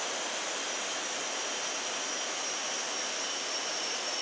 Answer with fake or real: real